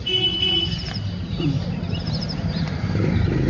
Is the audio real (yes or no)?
yes